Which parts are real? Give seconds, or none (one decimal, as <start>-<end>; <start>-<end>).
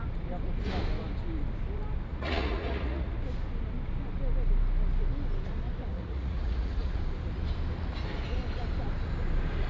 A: 0.0-2.1; 3.1-5.9; 7.0-9.7